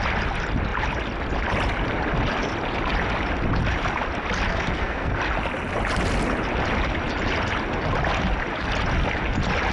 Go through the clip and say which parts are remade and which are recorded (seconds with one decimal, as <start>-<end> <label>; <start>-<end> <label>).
0.0-4.5 recorded; 4.5-5.2 remade; 5.2-9.7 recorded